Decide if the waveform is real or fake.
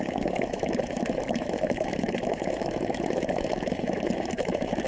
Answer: fake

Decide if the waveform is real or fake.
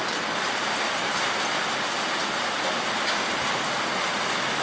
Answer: real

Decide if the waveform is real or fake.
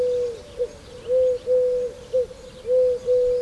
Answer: real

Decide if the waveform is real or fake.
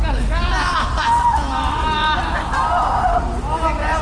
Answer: real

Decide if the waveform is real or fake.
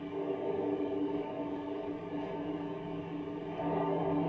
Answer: fake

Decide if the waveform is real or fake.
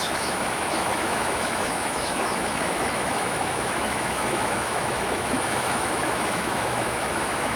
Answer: fake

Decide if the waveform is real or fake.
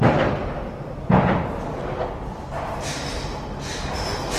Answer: fake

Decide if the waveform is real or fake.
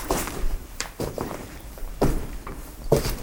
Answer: fake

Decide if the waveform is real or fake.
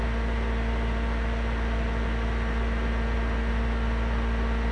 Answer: real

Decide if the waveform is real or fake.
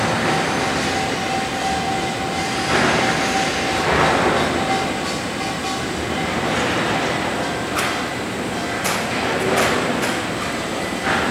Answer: real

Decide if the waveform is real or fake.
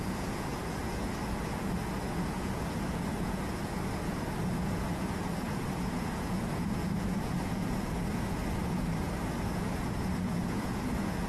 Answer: fake